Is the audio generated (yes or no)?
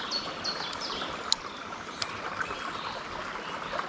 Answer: no